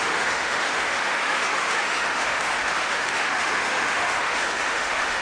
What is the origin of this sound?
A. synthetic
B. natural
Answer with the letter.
A